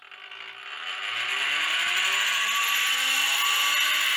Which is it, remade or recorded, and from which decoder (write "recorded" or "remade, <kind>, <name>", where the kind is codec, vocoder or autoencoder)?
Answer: recorded